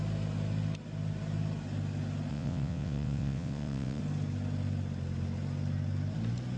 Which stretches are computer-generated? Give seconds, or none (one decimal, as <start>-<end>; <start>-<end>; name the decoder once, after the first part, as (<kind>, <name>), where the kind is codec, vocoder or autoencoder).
2.3-4.0 (vocoder, WaveNeXt)